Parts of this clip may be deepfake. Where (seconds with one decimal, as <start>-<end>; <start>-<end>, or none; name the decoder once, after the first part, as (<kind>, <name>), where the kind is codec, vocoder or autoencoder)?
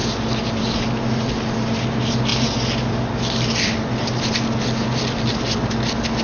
none